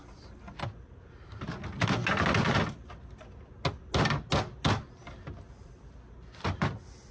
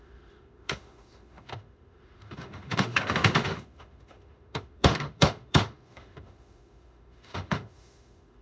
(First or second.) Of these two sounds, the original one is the first